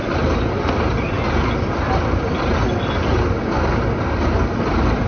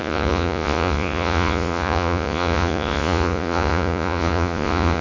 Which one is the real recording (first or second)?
first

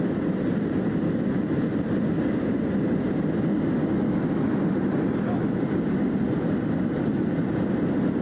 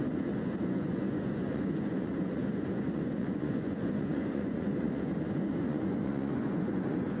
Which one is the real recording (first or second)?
first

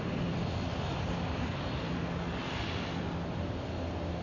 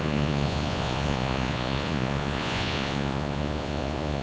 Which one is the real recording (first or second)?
first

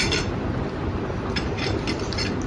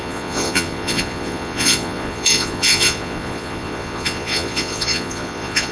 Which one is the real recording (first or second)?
first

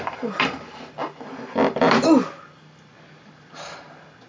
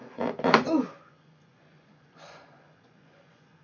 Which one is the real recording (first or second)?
first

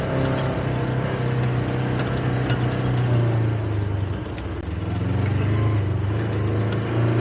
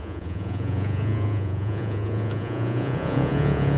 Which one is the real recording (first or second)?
first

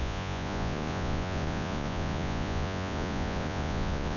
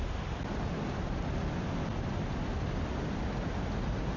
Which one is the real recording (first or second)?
second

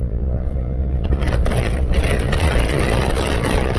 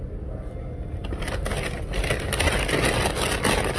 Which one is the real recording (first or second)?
second